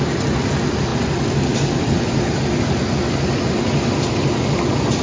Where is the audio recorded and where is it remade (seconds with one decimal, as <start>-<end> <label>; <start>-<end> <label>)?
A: 0.0-5.0 recorded